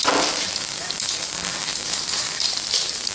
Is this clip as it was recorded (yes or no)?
no